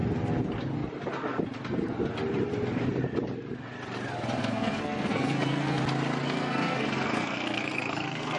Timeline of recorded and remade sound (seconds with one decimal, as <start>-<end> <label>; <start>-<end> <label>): 0.0-4.4 recorded; 4.4-5.8 remade; 5.8-6.2 recorded; 6.2-8.4 remade